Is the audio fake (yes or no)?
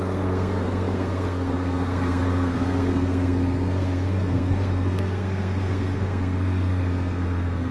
yes